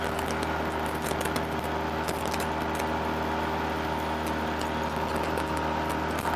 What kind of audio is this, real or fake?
real